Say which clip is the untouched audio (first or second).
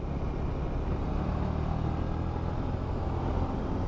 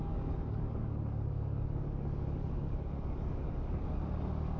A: first